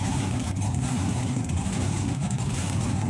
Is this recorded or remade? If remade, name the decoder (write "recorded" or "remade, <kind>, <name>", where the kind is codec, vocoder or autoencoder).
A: remade, codec, SNAC